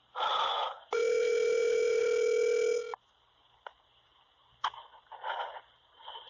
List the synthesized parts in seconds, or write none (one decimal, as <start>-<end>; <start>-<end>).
0.0-2.0; 5.8-6.3